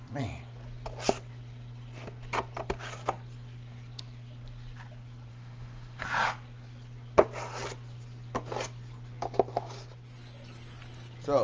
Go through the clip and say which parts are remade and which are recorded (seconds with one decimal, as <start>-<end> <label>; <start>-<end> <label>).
0.0-5.3 recorded; 5.3-6.0 remade; 6.0-11.4 recorded